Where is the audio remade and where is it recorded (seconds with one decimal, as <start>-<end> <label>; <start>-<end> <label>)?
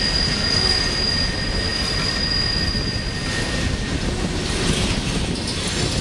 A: 0.0-6.0 recorded